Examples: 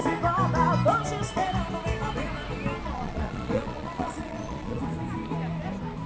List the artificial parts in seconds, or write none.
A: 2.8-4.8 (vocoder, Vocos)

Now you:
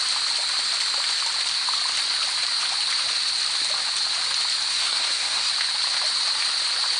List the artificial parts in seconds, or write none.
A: 4.7-5.5 (codec, SNAC)

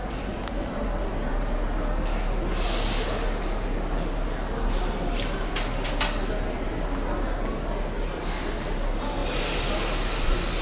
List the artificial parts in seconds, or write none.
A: none